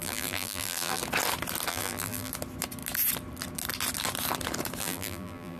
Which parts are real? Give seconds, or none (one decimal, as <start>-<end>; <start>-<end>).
1.0-1.7; 2.3-4.8